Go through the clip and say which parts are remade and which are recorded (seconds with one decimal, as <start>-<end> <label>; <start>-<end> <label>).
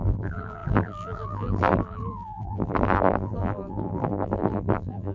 0.0-5.1 remade